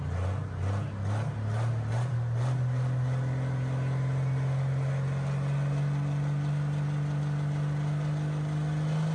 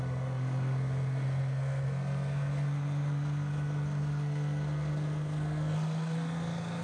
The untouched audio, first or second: first